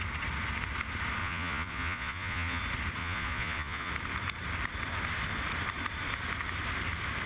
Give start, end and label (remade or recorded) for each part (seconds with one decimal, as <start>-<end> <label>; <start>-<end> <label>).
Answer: 0.0-1.2 recorded; 1.2-2.6 remade; 2.6-3.0 recorded; 3.0-3.9 remade; 3.9-7.3 recorded